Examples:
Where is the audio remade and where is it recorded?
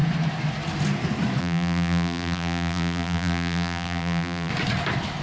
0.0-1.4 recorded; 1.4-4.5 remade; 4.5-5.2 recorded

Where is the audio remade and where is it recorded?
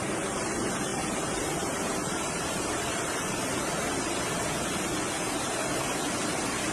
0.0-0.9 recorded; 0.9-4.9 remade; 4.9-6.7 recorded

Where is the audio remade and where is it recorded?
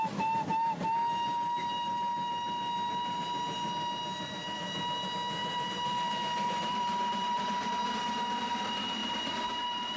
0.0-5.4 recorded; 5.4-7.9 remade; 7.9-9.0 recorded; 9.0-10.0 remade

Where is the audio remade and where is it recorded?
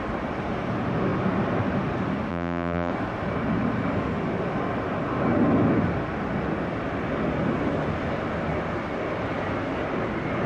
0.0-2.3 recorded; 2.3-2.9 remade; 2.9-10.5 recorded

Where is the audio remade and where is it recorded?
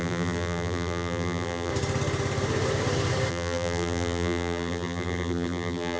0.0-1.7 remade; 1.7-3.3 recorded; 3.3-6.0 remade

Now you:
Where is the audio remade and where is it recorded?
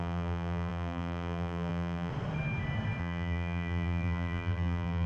0.0-2.1 remade; 2.1-3.0 recorded; 3.0-5.1 remade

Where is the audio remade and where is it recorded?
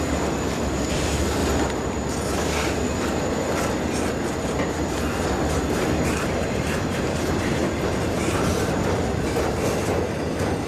0.0-1.4 remade; 1.4-5.5 recorded; 5.5-7.6 remade; 7.6-10.7 recorded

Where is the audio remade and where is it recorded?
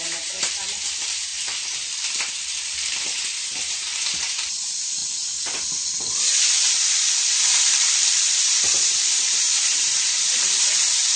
0.0-1.3 remade; 1.3-3.4 recorded; 3.4-5.0 remade; 5.0-7.1 recorded; 7.1-11.2 remade